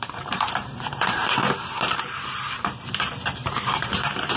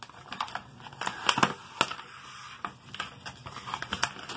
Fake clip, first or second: first